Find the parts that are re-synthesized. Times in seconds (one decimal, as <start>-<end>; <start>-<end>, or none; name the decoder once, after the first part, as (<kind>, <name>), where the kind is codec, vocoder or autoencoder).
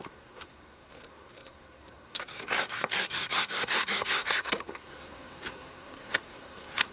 0.0-6.9 (codec, SNAC)